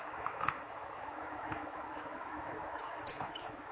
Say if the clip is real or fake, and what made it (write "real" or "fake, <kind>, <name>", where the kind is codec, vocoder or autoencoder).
fake, autoencoder, DAC-VAE